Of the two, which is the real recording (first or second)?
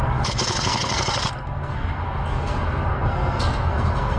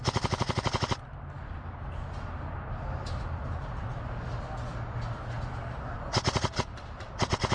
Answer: second